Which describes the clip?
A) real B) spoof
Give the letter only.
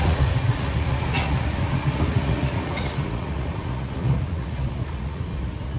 B